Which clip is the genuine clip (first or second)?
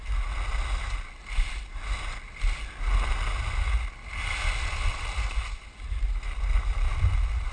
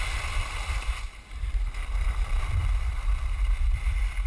first